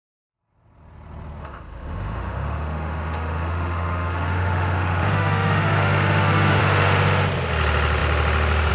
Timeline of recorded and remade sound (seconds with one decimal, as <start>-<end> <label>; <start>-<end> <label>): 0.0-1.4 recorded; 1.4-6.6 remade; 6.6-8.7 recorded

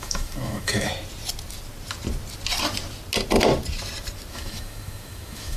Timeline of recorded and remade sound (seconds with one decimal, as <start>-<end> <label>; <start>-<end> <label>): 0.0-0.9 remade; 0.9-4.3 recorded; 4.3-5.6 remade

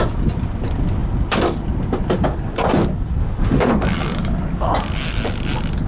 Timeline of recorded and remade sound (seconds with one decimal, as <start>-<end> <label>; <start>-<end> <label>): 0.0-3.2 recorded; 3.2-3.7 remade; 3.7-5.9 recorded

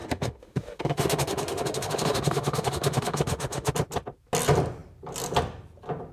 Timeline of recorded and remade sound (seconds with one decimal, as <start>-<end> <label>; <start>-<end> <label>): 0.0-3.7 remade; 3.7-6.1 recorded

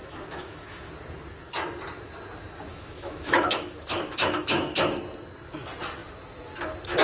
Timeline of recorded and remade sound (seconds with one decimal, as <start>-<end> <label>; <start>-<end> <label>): 0.0-0.9 remade; 0.9-2.7 recorded; 2.7-5.0 remade; 5.0-7.0 recorded